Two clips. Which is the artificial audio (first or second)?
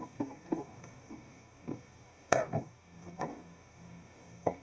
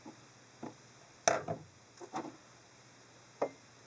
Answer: first